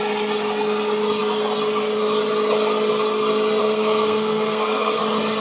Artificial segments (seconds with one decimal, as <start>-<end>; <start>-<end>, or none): 3.6-5.0